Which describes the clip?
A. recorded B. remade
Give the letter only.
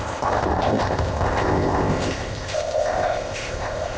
B